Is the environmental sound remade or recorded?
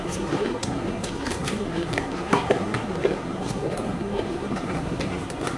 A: remade